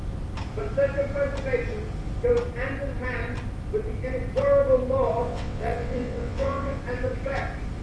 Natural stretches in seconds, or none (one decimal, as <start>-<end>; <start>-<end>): 0.0-5.2; 6.8-7.8